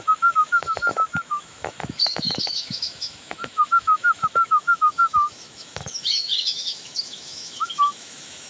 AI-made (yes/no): yes